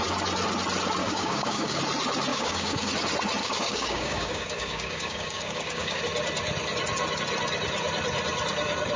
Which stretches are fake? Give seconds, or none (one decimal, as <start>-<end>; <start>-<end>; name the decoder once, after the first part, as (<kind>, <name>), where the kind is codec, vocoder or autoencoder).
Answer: 1.0-1.8 (codec, DAC); 2.3-2.9; 3.4-6.0